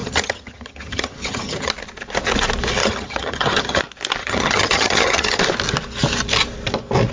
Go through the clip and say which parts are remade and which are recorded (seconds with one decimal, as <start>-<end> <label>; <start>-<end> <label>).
0.0-1.7 remade; 1.7-2.8 recorded; 2.8-3.8 remade; 3.8-4.2 recorded; 4.2-5.4 remade; 5.4-7.1 recorded